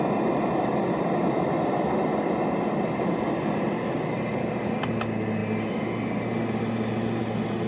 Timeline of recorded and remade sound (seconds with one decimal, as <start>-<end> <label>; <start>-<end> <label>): 0.0-7.7 recorded